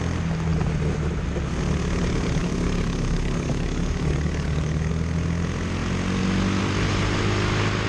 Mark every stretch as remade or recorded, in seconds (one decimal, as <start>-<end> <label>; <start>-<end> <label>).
0.0-2.4 recorded; 2.4-4.9 remade; 4.9-7.9 recorded